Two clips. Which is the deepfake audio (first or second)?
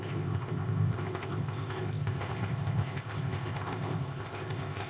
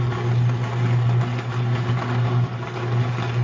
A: first